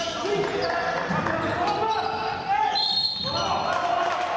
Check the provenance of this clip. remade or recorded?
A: recorded